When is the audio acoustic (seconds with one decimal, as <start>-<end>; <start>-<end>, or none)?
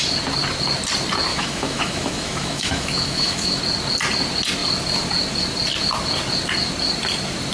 0.0-1.3; 3.6-7.5